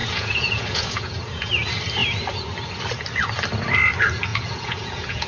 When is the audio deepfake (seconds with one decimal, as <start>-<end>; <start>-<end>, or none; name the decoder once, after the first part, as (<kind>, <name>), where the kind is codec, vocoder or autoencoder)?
0.0-1.5 (vocoder, Vocos); 4.3-5.3